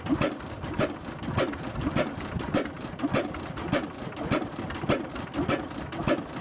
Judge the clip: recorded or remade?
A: recorded